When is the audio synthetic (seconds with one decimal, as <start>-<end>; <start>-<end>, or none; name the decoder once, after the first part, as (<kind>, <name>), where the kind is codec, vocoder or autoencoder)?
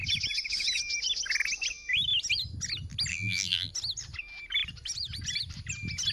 3.1-3.7 (vocoder, BigVGAN v2)